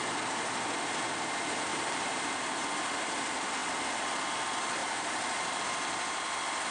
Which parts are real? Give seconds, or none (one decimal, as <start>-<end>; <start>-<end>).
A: 0.0-1.7; 2.7-4.8; 5.6-6.7